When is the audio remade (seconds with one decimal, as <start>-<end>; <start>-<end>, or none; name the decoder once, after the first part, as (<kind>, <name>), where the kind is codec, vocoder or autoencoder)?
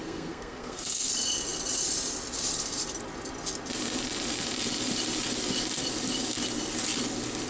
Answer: 0.0-1.1 (codec, SNAC)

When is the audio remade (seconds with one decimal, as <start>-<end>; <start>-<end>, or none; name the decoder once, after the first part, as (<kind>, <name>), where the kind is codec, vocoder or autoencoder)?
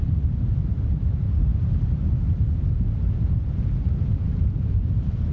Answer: none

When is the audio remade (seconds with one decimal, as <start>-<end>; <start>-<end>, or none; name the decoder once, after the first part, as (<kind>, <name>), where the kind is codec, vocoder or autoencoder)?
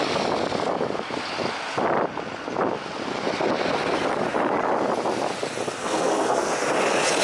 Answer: 5.8-6.5 (codec, SNAC)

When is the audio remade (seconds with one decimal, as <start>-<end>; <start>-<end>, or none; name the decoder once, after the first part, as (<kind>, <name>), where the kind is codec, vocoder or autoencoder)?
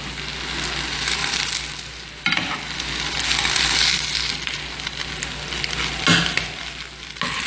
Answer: none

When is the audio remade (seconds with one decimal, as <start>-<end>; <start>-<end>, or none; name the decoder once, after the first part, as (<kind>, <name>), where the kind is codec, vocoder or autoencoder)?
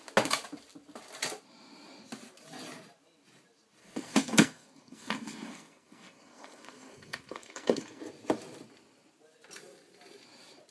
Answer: 3.8-8.0 (codec, SNAC)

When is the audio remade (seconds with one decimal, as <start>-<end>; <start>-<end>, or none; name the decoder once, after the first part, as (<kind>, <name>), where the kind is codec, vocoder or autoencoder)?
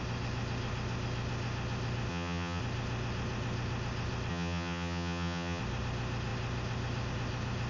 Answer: 2.1-2.6 (vocoder, HiFi-GAN); 4.3-5.6